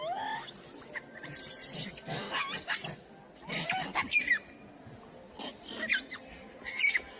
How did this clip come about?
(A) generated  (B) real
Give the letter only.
B